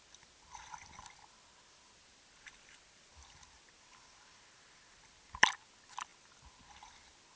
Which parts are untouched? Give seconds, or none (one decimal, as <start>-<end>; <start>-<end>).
0.0-7.4